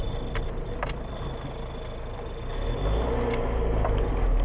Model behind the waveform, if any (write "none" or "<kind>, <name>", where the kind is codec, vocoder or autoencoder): none